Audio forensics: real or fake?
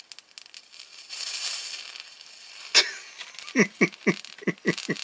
real